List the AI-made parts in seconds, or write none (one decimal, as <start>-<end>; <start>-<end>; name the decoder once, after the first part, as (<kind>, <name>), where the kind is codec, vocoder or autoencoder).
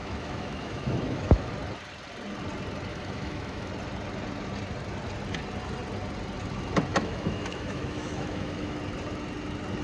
0.0-1.5 (autoencoder, DAC-VAE); 2.9-3.7; 6.9-8.8